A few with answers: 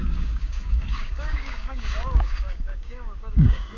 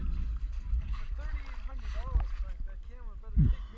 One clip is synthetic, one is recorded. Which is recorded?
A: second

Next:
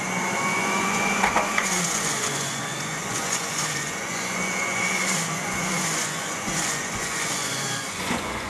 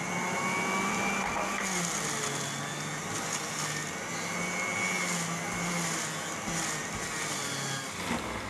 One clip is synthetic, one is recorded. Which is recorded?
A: second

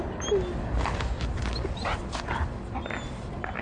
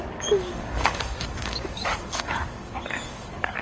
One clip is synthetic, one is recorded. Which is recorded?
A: first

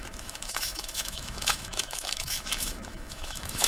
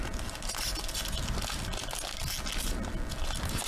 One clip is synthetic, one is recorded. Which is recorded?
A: second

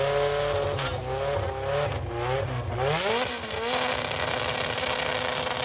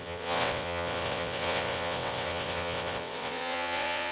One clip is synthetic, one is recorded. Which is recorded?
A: first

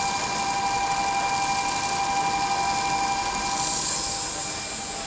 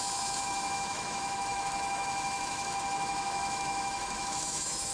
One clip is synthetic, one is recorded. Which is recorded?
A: first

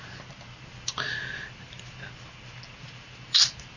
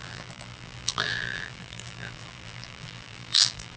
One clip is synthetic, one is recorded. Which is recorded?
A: first